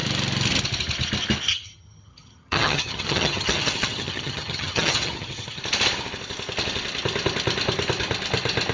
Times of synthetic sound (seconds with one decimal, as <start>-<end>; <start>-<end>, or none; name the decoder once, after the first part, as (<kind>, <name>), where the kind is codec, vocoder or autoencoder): 1.5-5.6 (vocoder, HiFi-GAN)